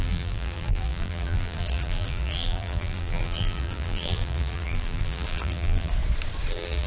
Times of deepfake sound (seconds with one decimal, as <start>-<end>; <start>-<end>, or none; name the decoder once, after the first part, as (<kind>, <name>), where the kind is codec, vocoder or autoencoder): 0.0-5.9 (vocoder, BigVGAN v2); 6.5-6.9